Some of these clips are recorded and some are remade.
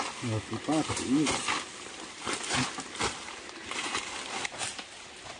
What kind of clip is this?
recorded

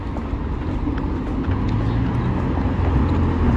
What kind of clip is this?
recorded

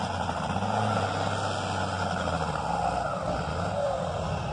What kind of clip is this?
recorded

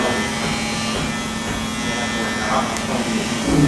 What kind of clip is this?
recorded